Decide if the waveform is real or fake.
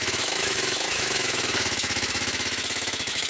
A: fake